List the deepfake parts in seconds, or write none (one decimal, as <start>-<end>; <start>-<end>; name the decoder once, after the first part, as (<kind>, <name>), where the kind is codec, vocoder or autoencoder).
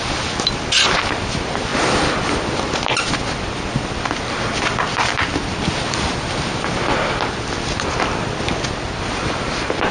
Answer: none